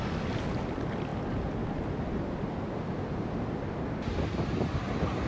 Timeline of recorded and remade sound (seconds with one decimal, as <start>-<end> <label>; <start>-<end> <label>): 0.0-5.3 recorded